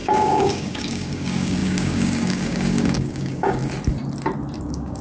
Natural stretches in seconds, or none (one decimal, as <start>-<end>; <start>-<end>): 3.6-4.6